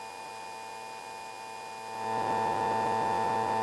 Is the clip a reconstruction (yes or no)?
no